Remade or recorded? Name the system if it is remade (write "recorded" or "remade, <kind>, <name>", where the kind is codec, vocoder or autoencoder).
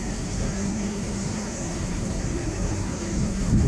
remade, codec, SNAC